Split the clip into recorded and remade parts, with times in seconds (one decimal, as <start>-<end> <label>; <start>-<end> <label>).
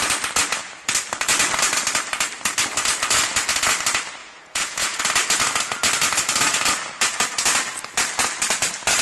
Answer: 0.0-4.2 recorded; 4.2-5.0 remade; 5.0-9.0 recorded